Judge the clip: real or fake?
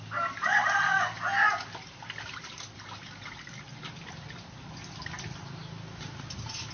real